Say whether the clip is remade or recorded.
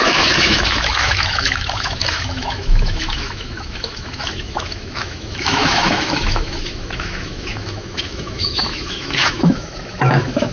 remade